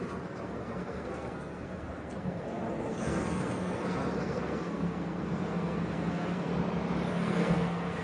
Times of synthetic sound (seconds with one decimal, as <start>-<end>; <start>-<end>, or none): 0.0-6.5; 7.1-8.0